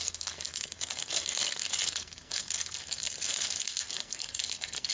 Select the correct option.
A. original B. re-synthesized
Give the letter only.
B